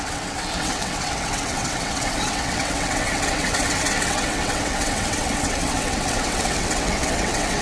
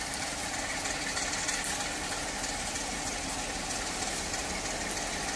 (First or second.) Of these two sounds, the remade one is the first